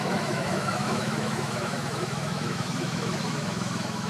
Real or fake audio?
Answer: fake